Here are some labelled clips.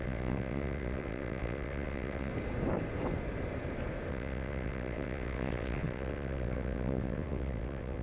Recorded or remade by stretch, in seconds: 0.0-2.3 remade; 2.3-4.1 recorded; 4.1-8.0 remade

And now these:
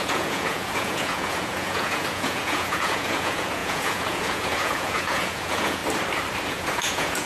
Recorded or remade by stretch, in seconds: 0.0-5.8 remade; 5.8-6.5 recorded; 6.5-7.3 remade

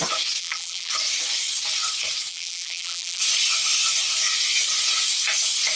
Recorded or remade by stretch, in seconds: 0.0-0.4 recorded; 0.4-0.9 remade; 0.9-2.3 recorded; 2.3-3.2 remade; 3.2-5.8 recorded